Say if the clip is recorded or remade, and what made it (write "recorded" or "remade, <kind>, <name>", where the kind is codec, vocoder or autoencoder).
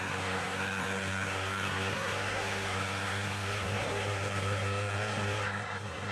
remade, codec, SNAC